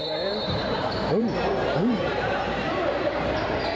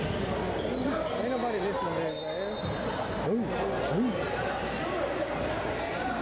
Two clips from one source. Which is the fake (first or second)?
first